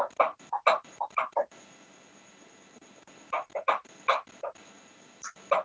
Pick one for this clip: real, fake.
real